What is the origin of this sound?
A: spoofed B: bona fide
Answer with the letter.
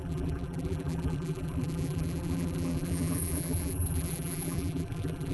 A